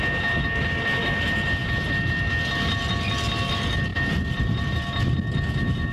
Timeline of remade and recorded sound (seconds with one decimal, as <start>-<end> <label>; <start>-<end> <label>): 0.0-3.9 recorded; 3.9-4.7 remade; 4.7-5.9 recorded